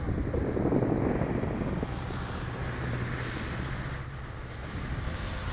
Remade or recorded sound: recorded